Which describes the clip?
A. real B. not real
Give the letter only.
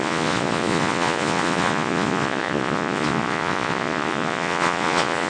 B